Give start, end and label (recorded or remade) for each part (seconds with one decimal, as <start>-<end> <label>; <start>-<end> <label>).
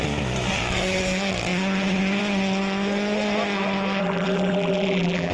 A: 0.0-4.0 recorded; 4.0-5.3 remade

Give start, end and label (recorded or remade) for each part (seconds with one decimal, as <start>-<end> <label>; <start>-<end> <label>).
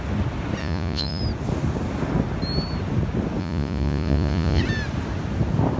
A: 0.0-0.6 recorded; 0.6-1.2 remade; 1.2-3.4 recorded; 3.4-4.6 remade; 4.6-5.8 recorded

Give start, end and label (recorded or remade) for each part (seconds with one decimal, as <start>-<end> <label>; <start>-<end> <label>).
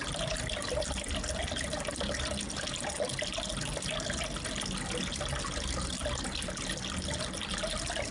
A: 0.0-8.1 recorded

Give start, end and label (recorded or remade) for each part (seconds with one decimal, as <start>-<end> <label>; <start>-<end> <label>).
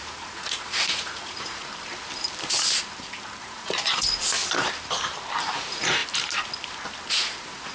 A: 0.0-1.7 remade; 1.7-3.4 recorded; 3.4-4.4 remade; 4.4-5.4 recorded; 5.4-6.0 remade; 6.0-7.1 recorded; 7.1-7.7 remade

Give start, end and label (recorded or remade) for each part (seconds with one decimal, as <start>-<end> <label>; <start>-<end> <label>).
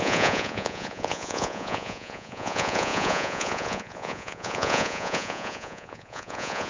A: 0.0-6.7 remade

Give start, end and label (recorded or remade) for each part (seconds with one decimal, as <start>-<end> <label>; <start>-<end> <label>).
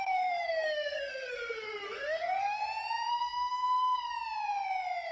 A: 0.0-2.6 remade; 2.6-3.1 recorded; 3.1-4.1 remade; 4.1-5.1 recorded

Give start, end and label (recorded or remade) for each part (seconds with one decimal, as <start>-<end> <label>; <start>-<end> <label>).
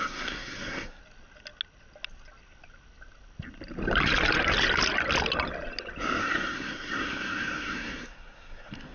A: 0.0-1.0 remade; 1.0-6.2 recorded; 6.2-8.9 remade